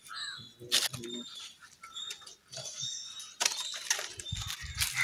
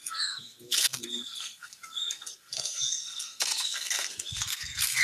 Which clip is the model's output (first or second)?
second